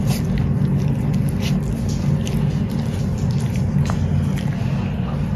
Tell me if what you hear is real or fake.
real